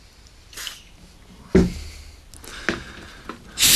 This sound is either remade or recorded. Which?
recorded